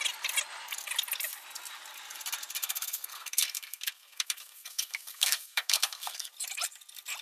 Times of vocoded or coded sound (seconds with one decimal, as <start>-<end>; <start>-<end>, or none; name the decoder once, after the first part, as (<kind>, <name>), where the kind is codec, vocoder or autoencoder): 2.6-6.3 (codec, SNAC)